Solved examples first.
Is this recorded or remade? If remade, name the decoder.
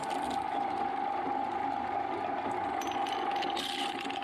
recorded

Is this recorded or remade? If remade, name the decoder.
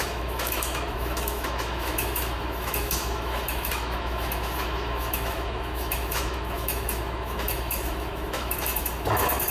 remade, autoencoder, DAC-VAE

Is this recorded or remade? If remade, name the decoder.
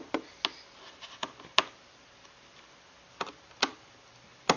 recorded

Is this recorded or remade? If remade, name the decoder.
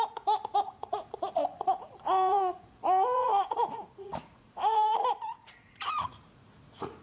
remade, vocoder, Vocos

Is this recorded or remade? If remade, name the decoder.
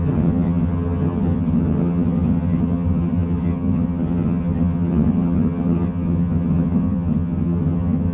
remade, vocoder, HiFi-GAN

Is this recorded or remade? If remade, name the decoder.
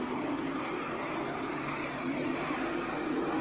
recorded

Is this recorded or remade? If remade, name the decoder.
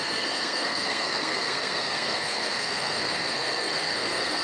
remade, codec, SNAC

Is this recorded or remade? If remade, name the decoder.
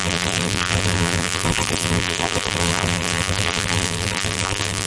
remade, vocoder, BigVGAN v2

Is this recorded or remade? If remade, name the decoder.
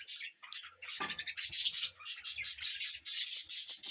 recorded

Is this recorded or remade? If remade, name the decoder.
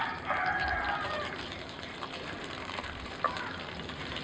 remade, vocoder, BigVGAN v2